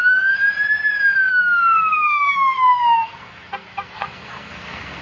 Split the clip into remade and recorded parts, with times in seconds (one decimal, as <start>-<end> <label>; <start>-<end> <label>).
0.0-0.4 remade; 0.4-1.3 recorded; 1.3-5.0 remade